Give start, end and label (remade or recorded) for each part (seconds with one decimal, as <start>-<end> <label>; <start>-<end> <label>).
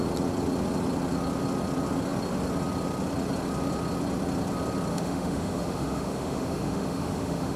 0.0-4.9 recorded; 4.9-7.6 remade